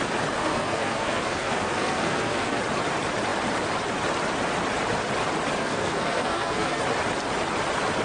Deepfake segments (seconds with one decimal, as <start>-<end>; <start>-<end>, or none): 0.4-2.6; 5.6-6.8

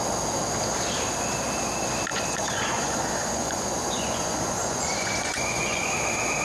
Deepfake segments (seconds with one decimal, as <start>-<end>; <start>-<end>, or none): 2.1-5.9